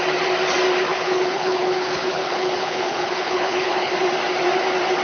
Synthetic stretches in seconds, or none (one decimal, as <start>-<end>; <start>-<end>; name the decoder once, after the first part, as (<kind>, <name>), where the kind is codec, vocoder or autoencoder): 0.9-3.9 (codec, HILCodec)